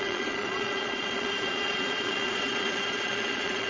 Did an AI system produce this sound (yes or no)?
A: yes